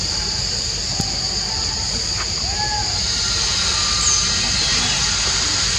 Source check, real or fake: real